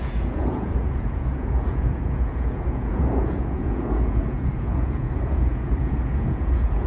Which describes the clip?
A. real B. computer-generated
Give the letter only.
B